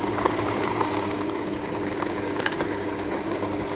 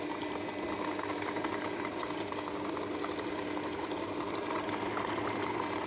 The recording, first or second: second